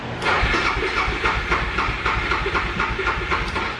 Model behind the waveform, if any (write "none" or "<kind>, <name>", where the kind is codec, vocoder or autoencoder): none